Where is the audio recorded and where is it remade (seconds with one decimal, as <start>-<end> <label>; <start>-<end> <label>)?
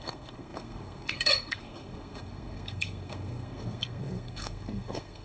0.0-5.2 remade